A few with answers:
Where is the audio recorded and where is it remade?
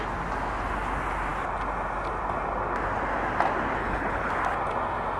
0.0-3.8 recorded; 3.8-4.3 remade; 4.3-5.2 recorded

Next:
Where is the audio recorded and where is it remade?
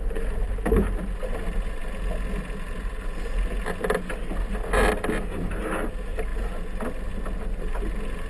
0.0-8.3 recorded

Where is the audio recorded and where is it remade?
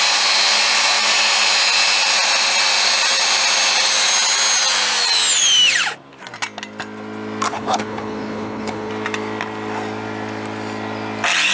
0.0-7.5 recorded; 7.5-8.9 remade; 8.9-11.5 recorded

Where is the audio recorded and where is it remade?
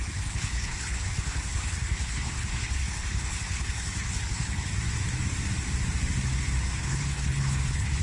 0.0-4.7 remade; 4.7-6.8 recorded; 6.8-8.0 remade